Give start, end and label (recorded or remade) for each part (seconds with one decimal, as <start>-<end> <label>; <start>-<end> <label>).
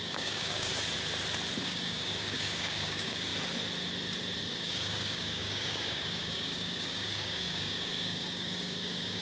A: 0.0-0.7 remade; 0.7-1.6 recorded; 1.6-3.3 remade; 3.3-4.5 recorded; 4.5-9.2 remade